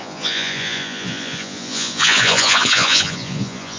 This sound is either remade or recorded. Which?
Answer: remade